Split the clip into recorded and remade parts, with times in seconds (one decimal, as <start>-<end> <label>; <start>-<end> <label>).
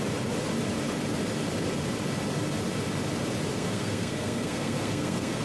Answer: 0.0-3.5 recorded; 3.5-5.4 remade